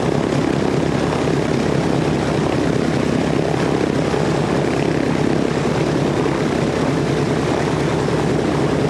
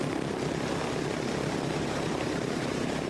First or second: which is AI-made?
second